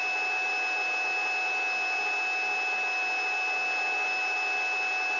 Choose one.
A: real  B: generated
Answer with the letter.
A